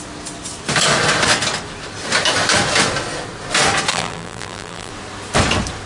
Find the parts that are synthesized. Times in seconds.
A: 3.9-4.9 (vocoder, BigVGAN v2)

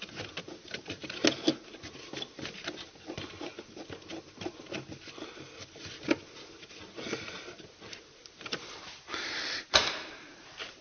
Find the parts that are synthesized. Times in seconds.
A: 0.0-1.0 (vocoder, BigVGAN v2); 2.5-3.5; 7.7-10.8

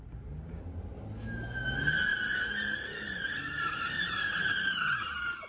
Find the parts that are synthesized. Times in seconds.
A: 2.1-5.5 (vocoder, BigVGAN v2)